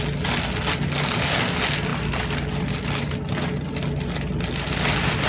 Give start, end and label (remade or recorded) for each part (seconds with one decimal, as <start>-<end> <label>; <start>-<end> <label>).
0.0-5.3 recorded